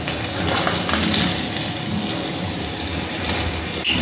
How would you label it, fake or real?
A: real